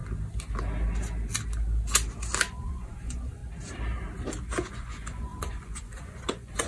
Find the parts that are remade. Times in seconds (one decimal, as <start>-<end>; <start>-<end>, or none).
2.5-3.4; 4.7-6.7